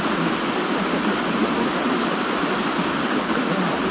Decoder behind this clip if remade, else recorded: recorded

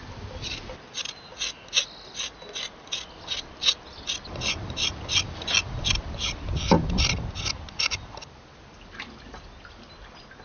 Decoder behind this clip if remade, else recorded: recorded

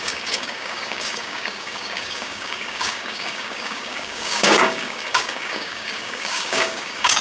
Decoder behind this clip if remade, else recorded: remade, codec, DAC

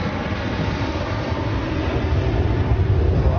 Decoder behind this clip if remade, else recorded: recorded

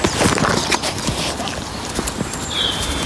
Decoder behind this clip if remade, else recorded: recorded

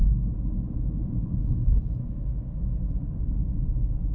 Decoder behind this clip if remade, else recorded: recorded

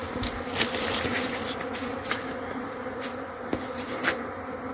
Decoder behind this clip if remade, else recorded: recorded